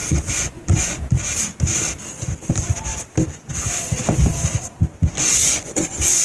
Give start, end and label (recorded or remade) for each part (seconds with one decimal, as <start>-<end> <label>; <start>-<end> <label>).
0.0-1.0 remade; 1.0-5.4 recorded; 5.4-6.2 remade